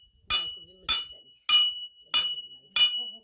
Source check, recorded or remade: recorded